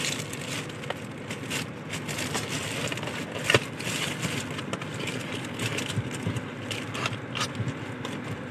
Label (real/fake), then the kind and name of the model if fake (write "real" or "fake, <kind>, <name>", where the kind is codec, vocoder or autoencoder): real